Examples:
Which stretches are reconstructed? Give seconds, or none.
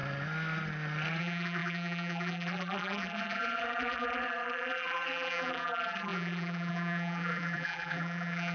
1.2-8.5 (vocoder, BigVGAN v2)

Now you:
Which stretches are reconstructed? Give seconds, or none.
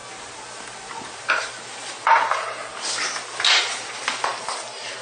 1.3-2.6 (vocoder, BigVGAN v2); 3.5-4.3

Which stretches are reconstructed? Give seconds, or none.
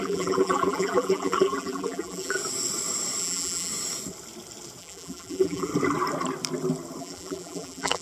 0.0-2.4 (vocoder, BigVGAN v2); 3.2-3.7; 4.8-5.7; 7.0-8.0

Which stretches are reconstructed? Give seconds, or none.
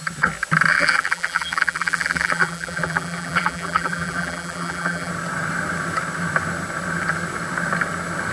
0.7-5.1 (vocoder, BigVGAN v2)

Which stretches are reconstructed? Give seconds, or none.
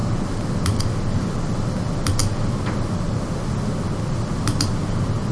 none